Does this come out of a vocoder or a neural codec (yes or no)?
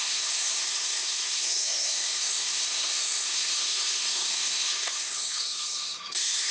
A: yes